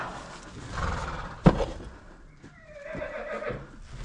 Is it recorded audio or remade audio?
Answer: remade